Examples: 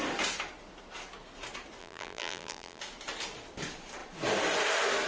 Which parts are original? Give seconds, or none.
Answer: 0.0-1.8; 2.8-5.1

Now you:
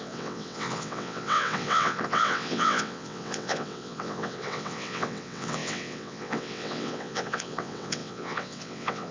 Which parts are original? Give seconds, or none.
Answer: none

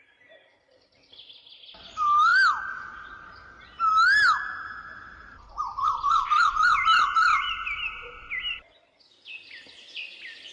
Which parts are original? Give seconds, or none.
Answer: 0.0-7.3

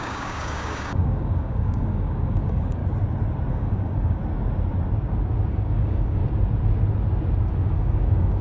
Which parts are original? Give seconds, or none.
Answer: 2.8-3.5; 4.2-5.5; 6.2-7.6

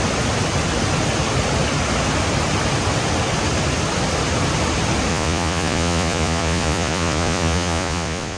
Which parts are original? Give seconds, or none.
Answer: 0.0-5.1

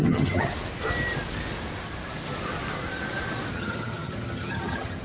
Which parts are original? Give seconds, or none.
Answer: 0.5-3.5

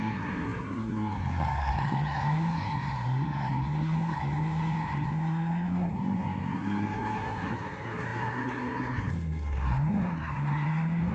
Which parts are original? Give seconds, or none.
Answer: none